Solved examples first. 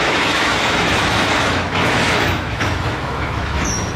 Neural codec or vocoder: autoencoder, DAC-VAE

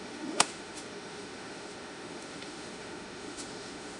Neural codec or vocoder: autoencoder, DAC-VAE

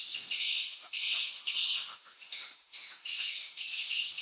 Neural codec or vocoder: autoencoder, DAC-VAE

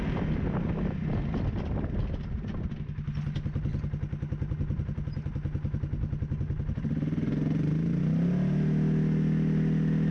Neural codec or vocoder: none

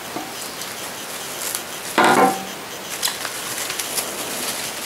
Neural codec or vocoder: none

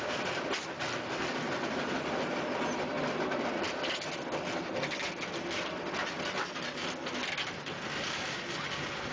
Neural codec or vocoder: none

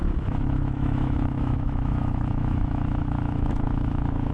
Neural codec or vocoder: autoencoder, DAC-VAE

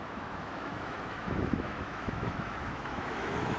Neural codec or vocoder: autoencoder, DAC-VAE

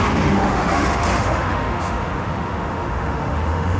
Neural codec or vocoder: autoencoder, DAC-VAE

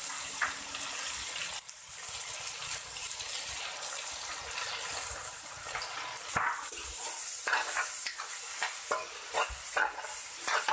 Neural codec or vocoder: none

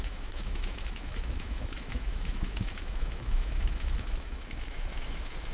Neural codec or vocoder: autoencoder, DAC-VAE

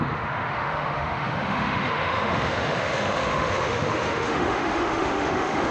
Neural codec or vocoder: autoencoder, DAC-VAE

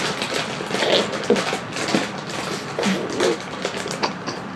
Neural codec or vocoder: none